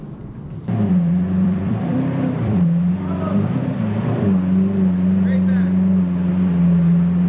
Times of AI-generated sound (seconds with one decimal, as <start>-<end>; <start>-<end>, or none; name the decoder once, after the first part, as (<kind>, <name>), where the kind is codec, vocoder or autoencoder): 0.0-7.3 (vocoder, BigVGAN v2)